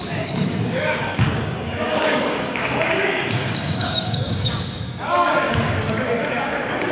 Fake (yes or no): yes